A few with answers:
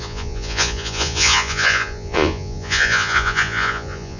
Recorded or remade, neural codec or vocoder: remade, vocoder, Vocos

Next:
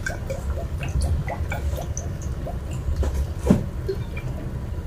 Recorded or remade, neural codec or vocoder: recorded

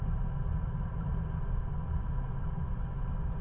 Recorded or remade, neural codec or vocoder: recorded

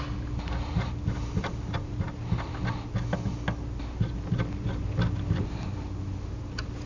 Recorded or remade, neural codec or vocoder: recorded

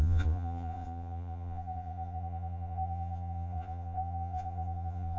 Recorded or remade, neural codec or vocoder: remade, vocoder, Vocos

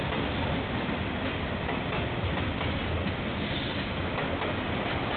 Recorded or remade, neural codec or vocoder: recorded